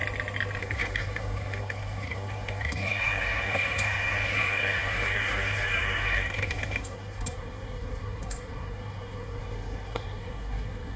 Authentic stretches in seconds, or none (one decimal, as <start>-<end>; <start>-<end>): 0.0-0.6

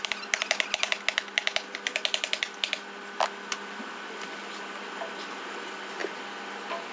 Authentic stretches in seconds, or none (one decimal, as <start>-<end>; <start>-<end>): 0.0-6.9

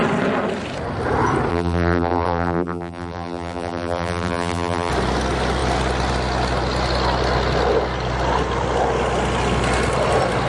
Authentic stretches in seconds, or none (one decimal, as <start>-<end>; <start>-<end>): 0.0-1.5; 4.9-10.5

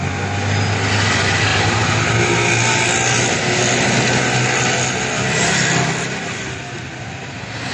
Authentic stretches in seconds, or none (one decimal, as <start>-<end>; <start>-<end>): 0.0-7.7

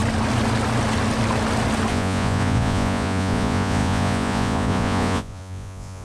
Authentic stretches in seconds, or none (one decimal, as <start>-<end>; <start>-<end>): 0.0-1.9

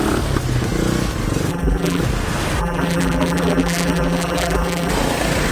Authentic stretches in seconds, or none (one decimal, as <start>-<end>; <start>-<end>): 0.0-1.5; 2.0-2.6; 4.9-5.5